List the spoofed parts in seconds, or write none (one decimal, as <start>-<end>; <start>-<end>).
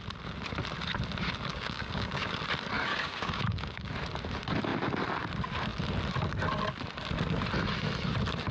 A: 1.5-2.4; 2.9-3.9